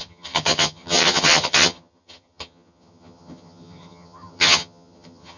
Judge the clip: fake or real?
fake